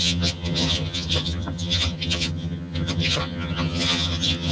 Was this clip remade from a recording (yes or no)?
yes